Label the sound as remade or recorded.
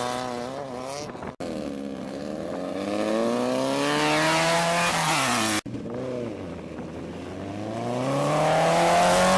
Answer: recorded